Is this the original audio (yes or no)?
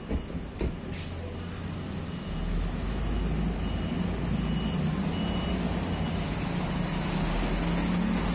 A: yes